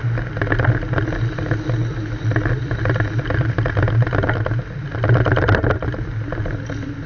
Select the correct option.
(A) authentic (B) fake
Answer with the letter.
A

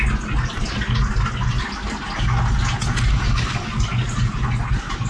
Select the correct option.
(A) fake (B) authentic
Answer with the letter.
B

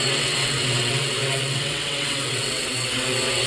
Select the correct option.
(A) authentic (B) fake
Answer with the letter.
B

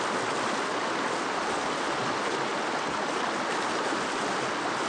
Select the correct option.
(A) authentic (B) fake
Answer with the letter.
A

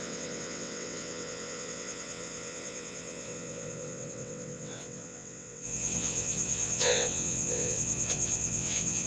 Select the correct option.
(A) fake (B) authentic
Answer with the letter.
A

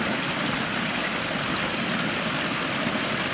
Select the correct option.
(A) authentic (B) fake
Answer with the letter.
A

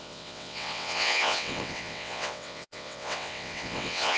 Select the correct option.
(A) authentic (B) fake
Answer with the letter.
B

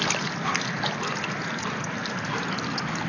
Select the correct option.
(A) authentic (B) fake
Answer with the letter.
A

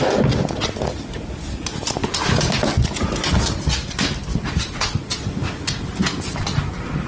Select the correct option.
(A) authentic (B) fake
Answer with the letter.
A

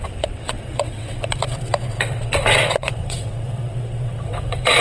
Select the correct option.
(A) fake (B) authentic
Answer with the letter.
A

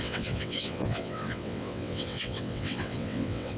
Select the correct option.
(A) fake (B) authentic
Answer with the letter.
A